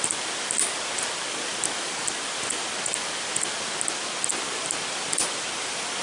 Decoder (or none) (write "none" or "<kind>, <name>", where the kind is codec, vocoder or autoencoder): none